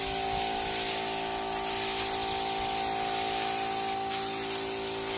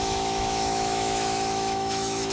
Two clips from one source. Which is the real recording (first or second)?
first